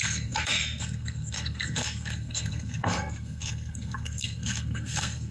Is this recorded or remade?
remade